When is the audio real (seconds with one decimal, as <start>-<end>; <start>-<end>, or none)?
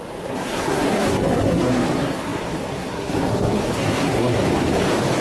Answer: 4.4-5.2